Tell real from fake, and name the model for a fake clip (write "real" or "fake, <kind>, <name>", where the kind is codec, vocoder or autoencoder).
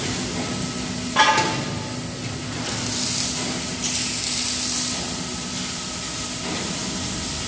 real